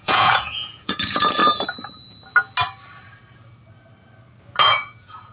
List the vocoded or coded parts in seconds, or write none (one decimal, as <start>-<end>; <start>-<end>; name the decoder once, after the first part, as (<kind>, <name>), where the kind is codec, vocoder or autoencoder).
0.0-1.4 (vocoder, Vocos); 4.6-5.3